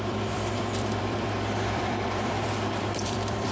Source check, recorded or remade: remade